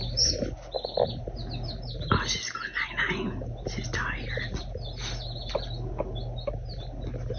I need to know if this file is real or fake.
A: real